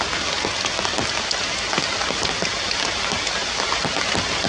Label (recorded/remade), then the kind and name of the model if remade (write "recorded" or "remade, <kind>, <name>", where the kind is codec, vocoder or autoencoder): recorded